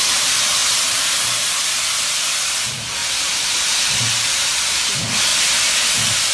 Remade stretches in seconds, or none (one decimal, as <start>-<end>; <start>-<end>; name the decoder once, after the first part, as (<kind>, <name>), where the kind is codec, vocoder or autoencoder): 3.0-4.8 (vocoder, BigVGAN v2)